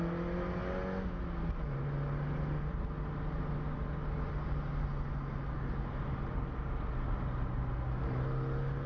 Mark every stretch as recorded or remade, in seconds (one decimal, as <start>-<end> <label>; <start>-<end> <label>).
0.0-8.9 recorded